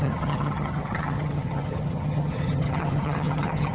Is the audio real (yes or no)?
no